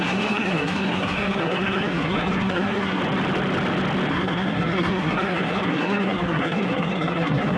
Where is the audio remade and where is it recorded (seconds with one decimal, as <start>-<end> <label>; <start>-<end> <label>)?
0.0-3.0 remade; 3.0-4.1 recorded; 4.1-7.6 remade